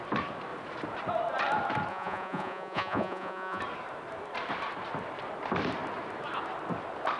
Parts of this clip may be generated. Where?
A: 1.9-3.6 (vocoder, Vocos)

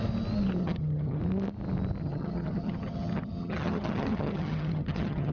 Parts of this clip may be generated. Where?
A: 0.6-1.2 (vocoder, HiFi-GAN); 2.0-5.3

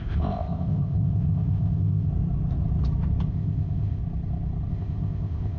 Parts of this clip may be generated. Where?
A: 0.0-2.1 (codec, ZipCodec); 3.3-4.0; 4.7-5.6

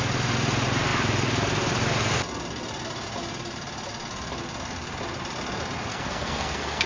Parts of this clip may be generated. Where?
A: 5.9-6.9 (codec, SNAC)

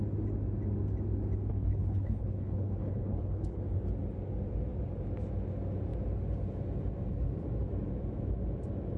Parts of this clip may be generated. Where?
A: 1.5-3.6 (codec, HILCodec)

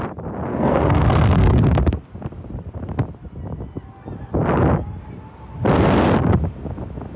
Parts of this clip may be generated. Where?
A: 0.5-1.6 (codec, SNAC)

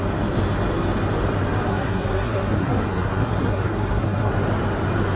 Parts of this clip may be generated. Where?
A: 1.7-4.3 (codec, SNAC)

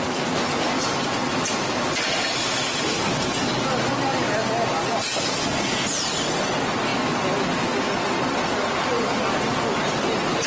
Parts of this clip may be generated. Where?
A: none